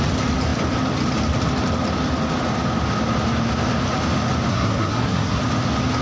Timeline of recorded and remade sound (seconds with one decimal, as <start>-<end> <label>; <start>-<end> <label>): 0.0-4.5 recorded; 4.5-5.4 remade; 5.4-6.0 recorded